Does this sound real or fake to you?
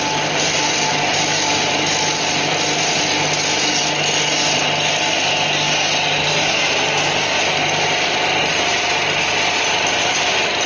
real